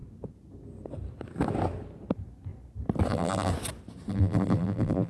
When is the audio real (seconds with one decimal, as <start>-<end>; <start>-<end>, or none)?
0.0-3.1; 3.5-4.1